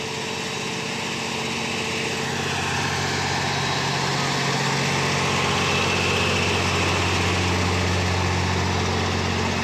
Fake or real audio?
real